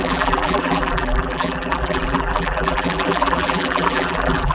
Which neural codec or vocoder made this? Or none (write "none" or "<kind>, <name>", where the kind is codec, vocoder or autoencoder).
vocoder, BigVGAN v2